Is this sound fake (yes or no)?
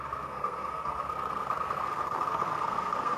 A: yes